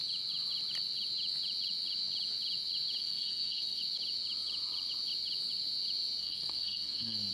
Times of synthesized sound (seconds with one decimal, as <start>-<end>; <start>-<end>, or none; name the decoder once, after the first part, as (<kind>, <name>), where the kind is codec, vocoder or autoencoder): 3.0-3.8 (codec, SNAC); 6.2-7.3